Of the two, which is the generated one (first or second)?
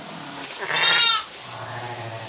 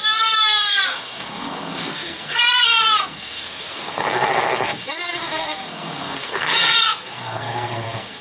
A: second